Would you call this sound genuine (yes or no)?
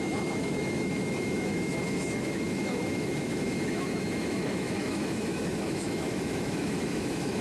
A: no